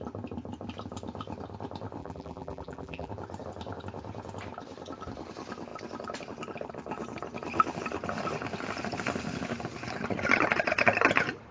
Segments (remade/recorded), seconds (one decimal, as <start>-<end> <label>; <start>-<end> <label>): 0.0-2.0 recorded; 2.0-3.1 remade; 3.1-11.5 recorded